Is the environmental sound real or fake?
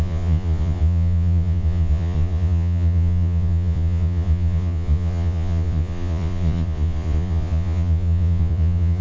fake